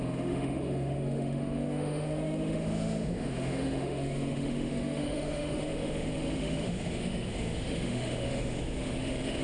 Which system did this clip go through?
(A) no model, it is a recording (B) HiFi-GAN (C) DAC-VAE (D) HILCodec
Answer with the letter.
C